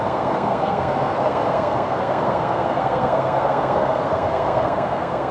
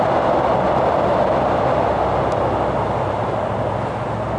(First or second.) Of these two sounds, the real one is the second